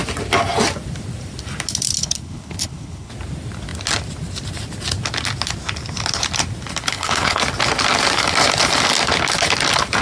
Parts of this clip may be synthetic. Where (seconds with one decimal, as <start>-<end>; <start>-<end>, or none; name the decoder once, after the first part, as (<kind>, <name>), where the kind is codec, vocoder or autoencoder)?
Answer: 2.0-3.1 (codec, HILCodec); 6.9-7.4